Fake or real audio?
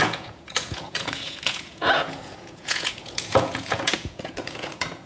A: fake